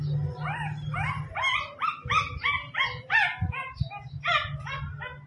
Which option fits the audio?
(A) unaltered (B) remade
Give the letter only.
A